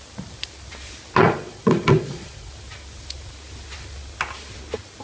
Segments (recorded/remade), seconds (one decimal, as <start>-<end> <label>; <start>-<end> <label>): 0.0-1.2 recorded; 1.2-2.5 remade; 2.5-5.0 recorded